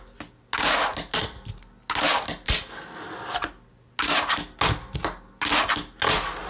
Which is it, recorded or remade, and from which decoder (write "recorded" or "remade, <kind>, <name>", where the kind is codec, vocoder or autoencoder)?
recorded